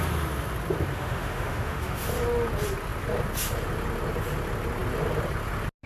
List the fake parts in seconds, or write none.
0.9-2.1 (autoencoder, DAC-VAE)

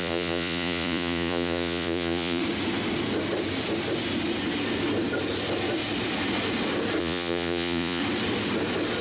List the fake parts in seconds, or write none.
0.0-2.4 (vocoder, Vocos); 7.0-8.0